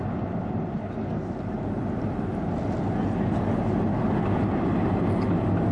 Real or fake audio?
real